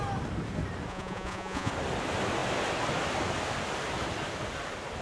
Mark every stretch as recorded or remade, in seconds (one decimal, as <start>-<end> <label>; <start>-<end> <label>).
0.0-0.9 recorded; 0.9-1.7 remade; 1.7-5.0 recorded